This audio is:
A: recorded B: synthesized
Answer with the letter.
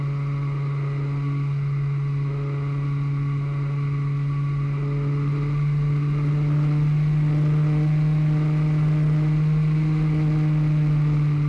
A